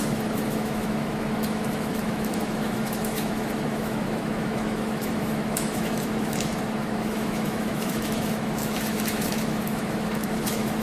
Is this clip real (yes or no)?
no